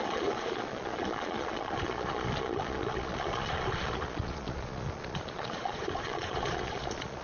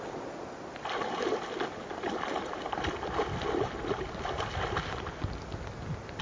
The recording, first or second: second